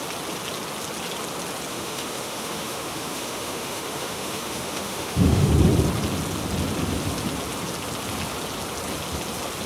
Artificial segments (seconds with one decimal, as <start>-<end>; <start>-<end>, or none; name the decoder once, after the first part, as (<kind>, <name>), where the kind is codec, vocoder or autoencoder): 1.7-5.5 (autoencoder, DAC-VAE)